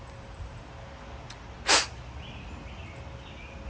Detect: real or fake real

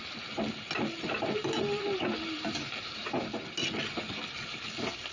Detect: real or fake real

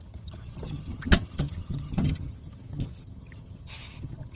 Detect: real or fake fake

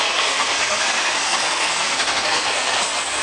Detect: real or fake fake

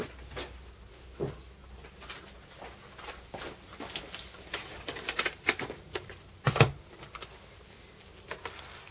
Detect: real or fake real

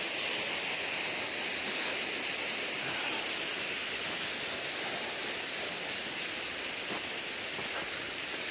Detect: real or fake real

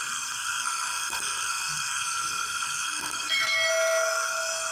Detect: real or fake fake